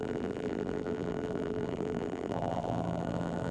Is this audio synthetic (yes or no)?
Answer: yes